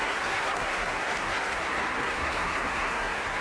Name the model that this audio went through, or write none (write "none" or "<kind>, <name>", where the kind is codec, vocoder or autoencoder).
codec, SNAC